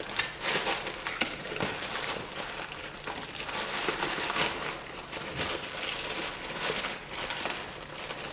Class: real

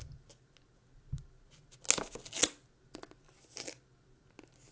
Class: real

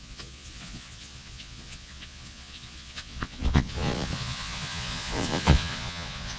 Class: fake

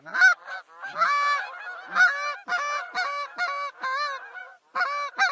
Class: real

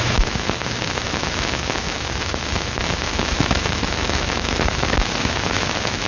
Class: fake